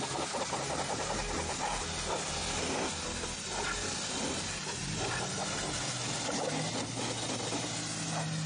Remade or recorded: recorded